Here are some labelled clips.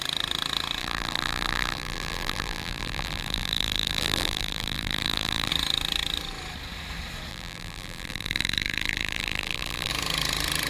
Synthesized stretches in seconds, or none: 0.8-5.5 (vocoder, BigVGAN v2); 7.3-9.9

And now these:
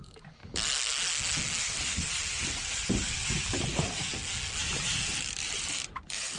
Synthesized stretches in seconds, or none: 0.0-0.4 (vocoder, BigVGAN v2); 1.6-4.1; 4.6-6.4

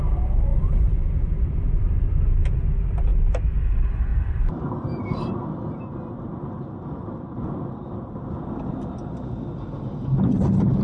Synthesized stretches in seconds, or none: 0.5-2.2 (vocoder, BigVGAN v2); 4.1-5.3

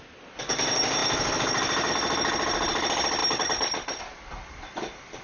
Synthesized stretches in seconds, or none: 1.0-1.9 (vocoder, BigVGAN v2)

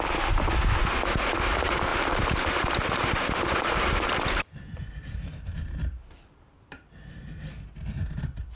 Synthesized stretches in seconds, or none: 1.9-6.9 (vocoder, BigVGAN v2)